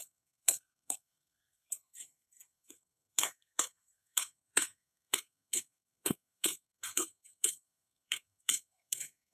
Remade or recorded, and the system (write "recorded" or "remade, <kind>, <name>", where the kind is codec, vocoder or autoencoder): remade, codec, SNAC